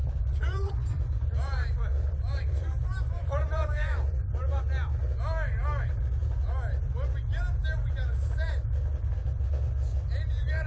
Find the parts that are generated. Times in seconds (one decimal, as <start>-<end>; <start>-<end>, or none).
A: 0.0-4.6